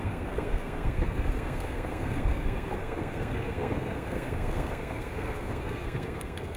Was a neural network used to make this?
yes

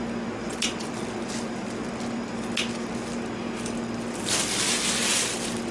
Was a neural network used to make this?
no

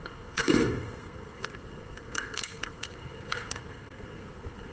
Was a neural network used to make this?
yes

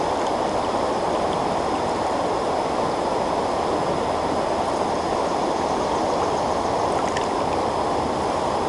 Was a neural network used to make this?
no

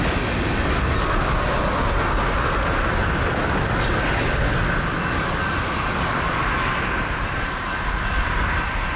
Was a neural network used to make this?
no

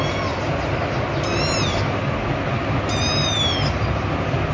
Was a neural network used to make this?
no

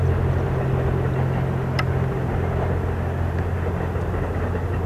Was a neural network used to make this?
no